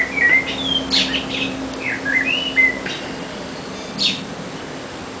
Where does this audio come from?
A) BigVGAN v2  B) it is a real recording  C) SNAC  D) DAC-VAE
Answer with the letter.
B